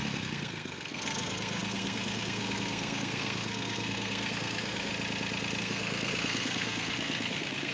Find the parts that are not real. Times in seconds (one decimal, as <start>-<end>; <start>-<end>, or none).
0.0-4.9; 5.6-7.7